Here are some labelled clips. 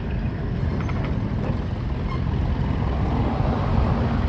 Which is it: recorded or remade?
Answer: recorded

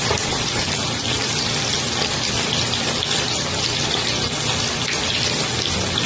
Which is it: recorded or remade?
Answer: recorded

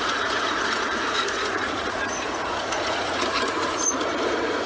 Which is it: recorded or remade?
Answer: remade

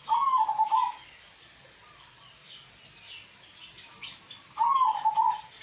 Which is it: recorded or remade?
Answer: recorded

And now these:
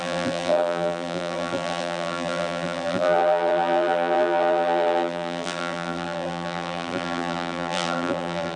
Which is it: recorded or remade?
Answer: remade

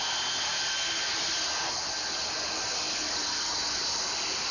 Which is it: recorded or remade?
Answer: recorded